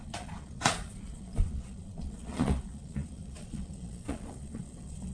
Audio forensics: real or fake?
fake